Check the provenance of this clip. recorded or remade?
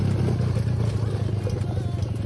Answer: recorded